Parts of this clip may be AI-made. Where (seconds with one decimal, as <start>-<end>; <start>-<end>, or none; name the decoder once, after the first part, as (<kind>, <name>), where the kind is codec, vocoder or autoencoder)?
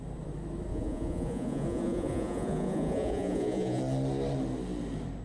0.7-3.8 (vocoder, Vocos)